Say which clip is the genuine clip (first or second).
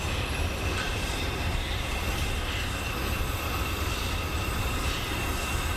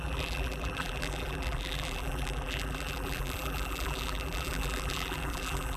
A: first